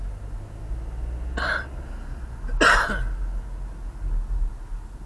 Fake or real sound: real